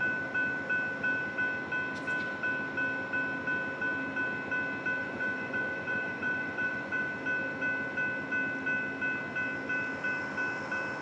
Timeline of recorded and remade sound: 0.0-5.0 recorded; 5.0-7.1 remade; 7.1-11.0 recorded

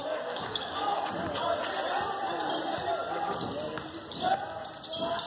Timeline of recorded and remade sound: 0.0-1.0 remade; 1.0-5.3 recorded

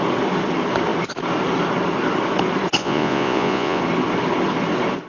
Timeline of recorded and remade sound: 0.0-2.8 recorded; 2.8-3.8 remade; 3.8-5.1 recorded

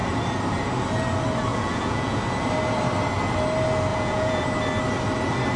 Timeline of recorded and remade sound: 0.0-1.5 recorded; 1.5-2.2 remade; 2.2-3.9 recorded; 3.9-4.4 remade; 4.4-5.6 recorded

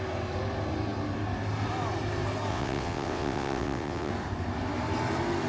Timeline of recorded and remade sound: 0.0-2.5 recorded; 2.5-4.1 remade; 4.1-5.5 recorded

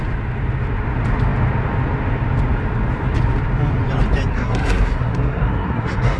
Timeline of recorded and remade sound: 0.0-4.3 recorded; 4.3-6.2 remade

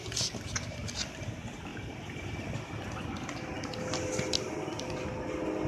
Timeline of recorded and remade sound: 0.0-5.7 recorded

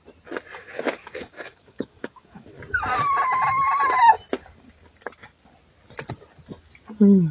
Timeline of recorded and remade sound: 0.0-0.6 recorded; 0.6-2.6 remade; 2.6-7.3 recorded